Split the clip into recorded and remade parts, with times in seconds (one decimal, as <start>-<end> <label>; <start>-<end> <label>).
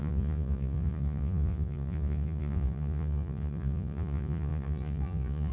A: 0.0-5.5 remade